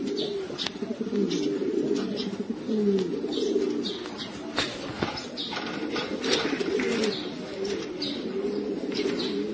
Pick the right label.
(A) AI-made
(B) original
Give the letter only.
B